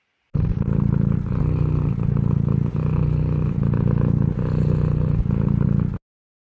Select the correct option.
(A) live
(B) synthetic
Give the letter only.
A